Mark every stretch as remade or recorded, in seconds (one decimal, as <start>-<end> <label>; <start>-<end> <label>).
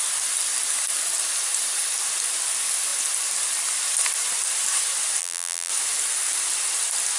0.0-5.2 recorded; 5.2-5.7 remade; 5.7-7.2 recorded